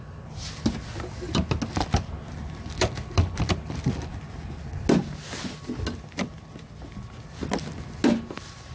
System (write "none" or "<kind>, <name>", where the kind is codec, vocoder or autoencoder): none